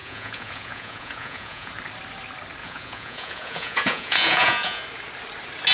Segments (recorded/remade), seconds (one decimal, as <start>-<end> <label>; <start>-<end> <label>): 0.0-1.7 remade; 1.7-2.6 recorded; 2.6-4.8 remade; 4.8-5.7 recorded

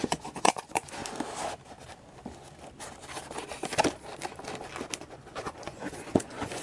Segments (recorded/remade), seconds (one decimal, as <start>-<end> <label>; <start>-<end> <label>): 0.0-1.0 remade; 1.0-5.0 recorded; 5.0-6.6 remade

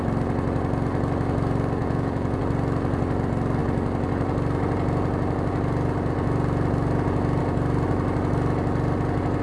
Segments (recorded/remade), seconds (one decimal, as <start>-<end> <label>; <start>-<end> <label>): 0.0-1.8 recorded; 1.8-2.4 remade; 2.4-9.4 recorded

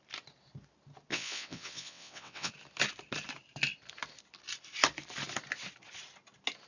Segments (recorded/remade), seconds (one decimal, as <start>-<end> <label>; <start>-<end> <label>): 0.0-1.1 recorded; 1.1-2.5 remade; 2.5-6.7 recorded